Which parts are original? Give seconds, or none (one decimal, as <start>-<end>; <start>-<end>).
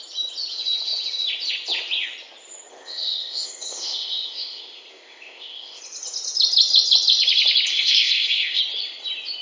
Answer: 0.0-2.7; 5.8-7.7; 8.6-9.4